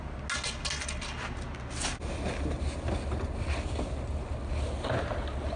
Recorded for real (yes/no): yes